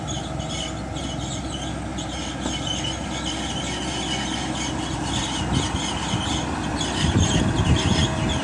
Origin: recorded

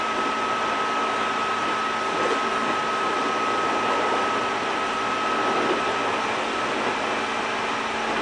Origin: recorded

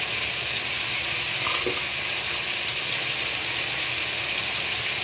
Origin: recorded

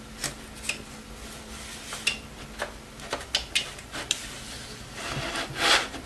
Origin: recorded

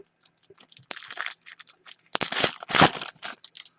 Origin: recorded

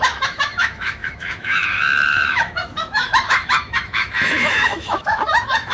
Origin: remade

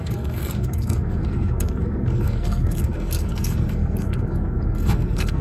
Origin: remade